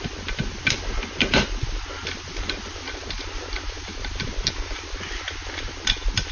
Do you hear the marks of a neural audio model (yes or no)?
no